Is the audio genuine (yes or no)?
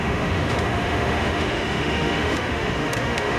no